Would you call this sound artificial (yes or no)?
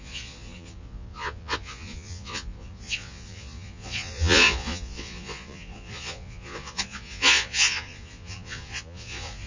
yes